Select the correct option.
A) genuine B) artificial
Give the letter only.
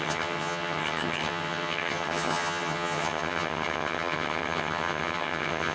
B